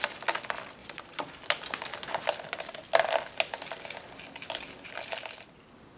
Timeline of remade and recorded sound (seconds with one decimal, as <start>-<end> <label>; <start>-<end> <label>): 0.0-0.8 recorded; 0.8-1.3 remade; 1.3-6.0 recorded